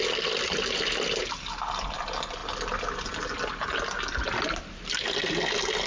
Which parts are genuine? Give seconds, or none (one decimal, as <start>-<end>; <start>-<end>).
0.0-5.9